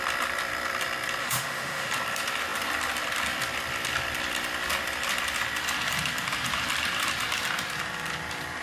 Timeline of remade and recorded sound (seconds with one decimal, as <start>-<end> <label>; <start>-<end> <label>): 0.0-1.2 recorded; 1.2-1.9 remade; 1.9-8.6 recorded